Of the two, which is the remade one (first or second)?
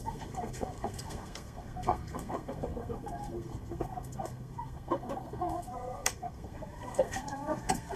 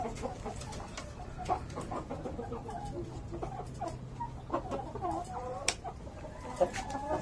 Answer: first